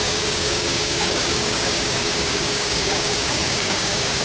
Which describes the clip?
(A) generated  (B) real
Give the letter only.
A